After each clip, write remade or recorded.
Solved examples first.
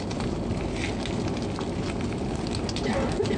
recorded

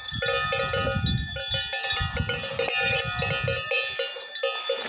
recorded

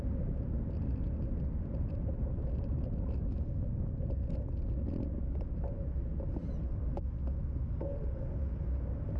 recorded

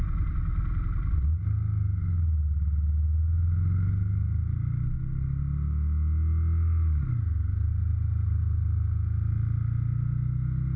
recorded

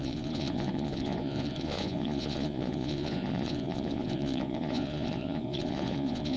remade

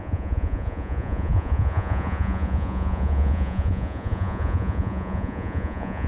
remade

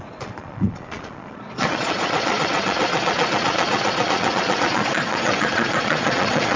remade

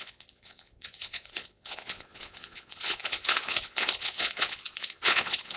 remade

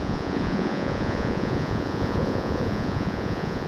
remade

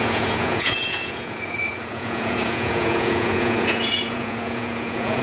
remade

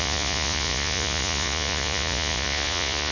remade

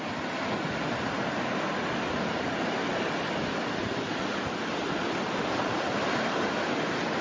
recorded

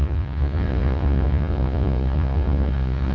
remade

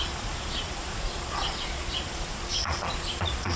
remade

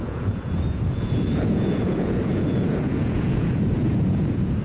remade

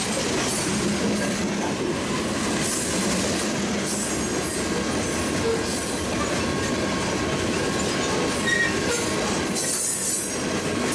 recorded